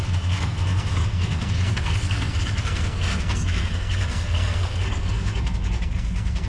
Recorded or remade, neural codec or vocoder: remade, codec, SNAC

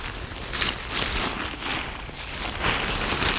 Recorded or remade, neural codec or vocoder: recorded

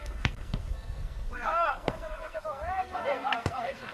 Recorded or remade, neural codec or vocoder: remade, codec, SNAC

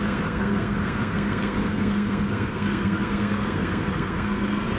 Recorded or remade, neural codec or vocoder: remade, codec, SNAC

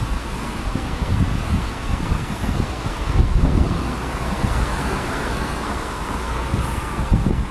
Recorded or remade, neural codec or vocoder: remade, codec, SNAC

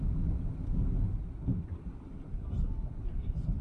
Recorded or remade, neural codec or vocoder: recorded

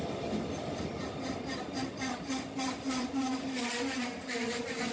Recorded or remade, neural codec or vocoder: recorded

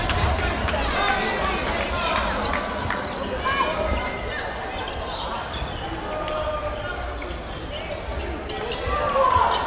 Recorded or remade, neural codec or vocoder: recorded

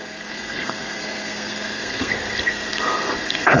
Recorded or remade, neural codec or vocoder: remade, codec, SNAC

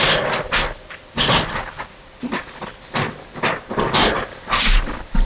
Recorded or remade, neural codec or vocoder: recorded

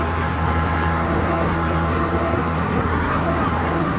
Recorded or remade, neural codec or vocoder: remade, codec, SNAC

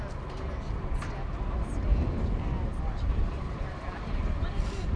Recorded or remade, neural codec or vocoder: recorded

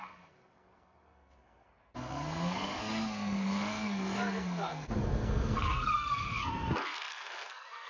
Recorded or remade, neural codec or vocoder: remade, codec, SNAC